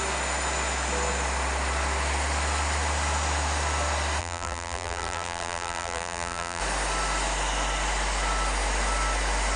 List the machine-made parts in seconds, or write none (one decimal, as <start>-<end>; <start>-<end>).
4.2-6.6